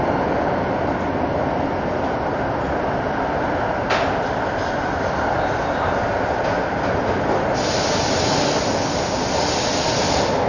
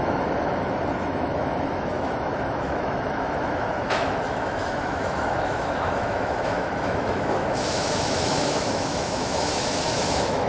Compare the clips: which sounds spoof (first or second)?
second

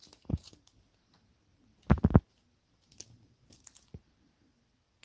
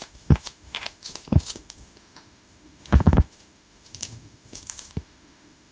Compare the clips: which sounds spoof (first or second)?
second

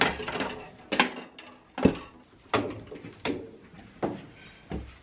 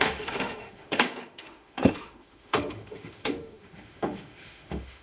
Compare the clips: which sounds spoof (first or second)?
second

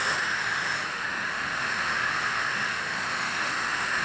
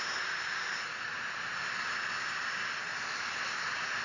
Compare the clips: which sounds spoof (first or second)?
first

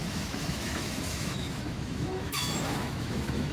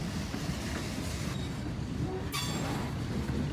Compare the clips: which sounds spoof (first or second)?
first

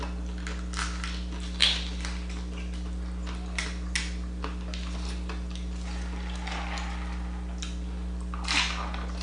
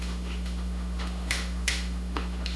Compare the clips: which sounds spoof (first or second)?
second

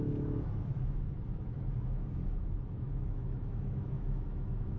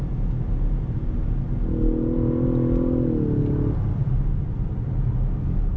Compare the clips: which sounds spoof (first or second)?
first